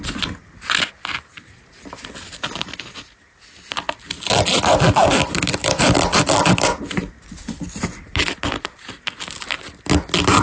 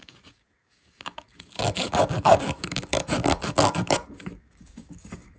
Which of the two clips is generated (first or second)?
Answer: second